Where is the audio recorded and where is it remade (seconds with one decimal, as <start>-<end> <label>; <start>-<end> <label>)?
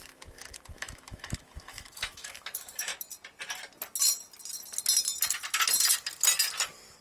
0.0-2.9 remade; 2.9-7.0 recorded